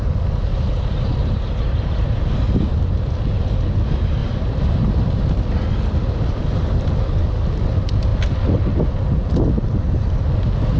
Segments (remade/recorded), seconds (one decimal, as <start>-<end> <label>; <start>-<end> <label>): 0.0-0.5 recorded; 0.5-2.3 remade; 2.3-4.2 recorded; 4.2-5.3 remade; 5.3-10.8 recorded